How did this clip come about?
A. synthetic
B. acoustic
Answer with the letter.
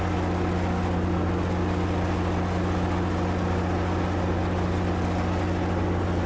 B